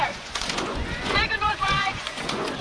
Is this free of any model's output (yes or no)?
no